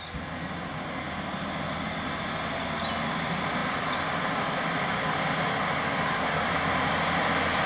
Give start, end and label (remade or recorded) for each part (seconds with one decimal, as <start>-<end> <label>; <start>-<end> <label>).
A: 0.0-3.6 recorded; 3.6-5.0 remade; 5.0-7.7 recorded